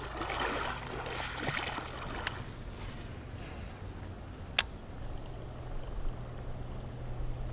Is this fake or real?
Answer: real